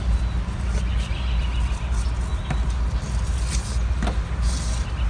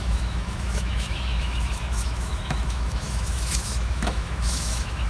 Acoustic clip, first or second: first